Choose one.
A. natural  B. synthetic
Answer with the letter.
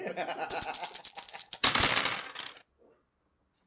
A